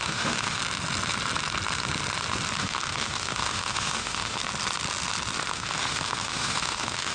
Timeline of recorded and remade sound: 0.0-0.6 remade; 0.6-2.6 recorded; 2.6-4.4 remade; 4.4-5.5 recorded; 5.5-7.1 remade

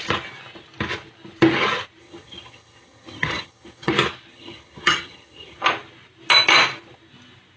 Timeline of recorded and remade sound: 0.0-2.0 recorded; 2.0-3.9 remade; 3.9-4.3 recorded; 4.3-5.6 remade; 5.6-7.6 recorded

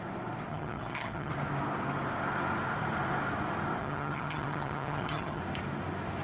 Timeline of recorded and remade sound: 0.0-0.5 recorded; 0.5-1.3 remade; 1.3-3.8 recorded; 3.8-5.4 remade; 5.4-6.2 recorded

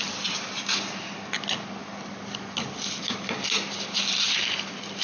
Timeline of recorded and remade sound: 0.0-5.0 recorded

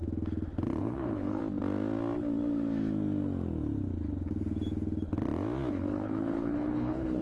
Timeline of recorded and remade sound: 0.0-0.8 recorded; 0.8-1.4 remade; 1.4-5.7 recorded; 5.7-7.2 remade

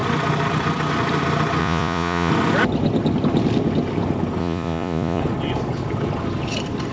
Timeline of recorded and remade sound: 0.0-1.6 recorded; 1.6-2.3 remade; 2.3-4.4 recorded; 4.4-5.2 remade; 5.2-6.9 recorded